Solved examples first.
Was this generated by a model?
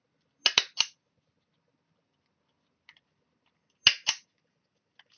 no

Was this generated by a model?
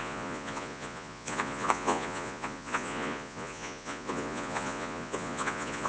yes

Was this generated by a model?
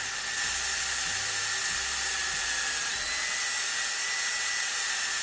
no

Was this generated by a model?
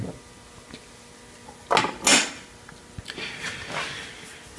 no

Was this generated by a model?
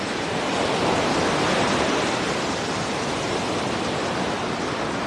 no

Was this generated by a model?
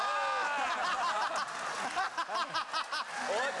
no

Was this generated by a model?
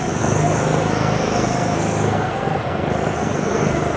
yes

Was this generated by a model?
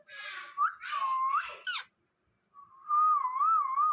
no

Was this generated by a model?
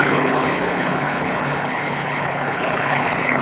yes